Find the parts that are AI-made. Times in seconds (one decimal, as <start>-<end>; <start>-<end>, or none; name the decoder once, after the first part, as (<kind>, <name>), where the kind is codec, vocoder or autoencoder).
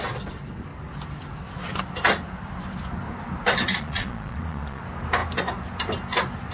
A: 3.7-4.8 (vocoder, Vocos)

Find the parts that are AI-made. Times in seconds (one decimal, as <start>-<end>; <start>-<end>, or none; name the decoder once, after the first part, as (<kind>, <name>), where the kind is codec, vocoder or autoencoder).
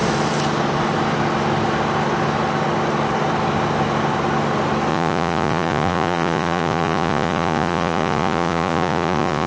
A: 4.9-9.5 (vocoder, Vocos)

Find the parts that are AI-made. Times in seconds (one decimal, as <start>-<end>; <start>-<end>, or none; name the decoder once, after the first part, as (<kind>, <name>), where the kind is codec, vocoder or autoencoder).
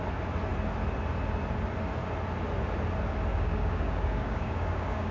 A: 3.3-5.1 (codec, DAC)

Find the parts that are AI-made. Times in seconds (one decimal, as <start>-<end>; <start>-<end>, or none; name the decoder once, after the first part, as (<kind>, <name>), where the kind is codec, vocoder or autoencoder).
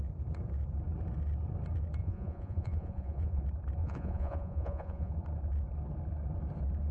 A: 2.0-3.4 (vocoder, Vocos); 3.8-5.1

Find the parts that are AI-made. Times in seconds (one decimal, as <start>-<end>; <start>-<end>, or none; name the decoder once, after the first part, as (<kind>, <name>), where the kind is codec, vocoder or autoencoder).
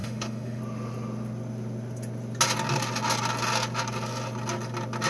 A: 0.0-0.6 (autoencoder, DAC-VAE)